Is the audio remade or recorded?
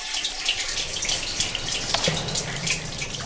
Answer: recorded